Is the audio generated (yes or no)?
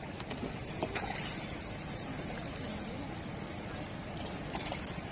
no